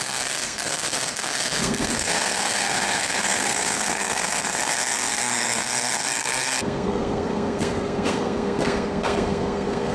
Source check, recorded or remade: remade